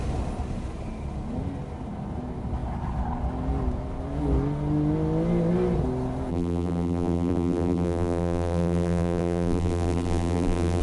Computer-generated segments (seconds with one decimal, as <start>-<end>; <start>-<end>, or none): 6.3-10.8